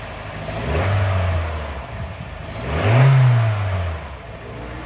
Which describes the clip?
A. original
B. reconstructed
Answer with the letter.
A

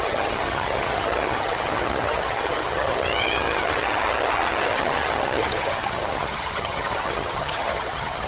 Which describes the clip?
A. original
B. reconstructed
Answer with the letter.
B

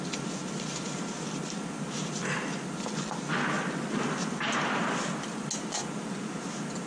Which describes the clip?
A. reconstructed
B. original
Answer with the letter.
B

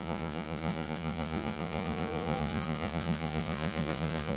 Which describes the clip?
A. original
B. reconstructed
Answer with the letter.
B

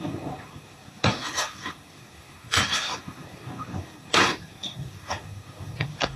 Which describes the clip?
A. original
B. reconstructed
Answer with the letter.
B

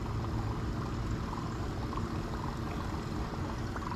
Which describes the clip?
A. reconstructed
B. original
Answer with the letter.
B